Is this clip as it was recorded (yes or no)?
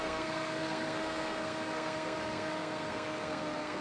no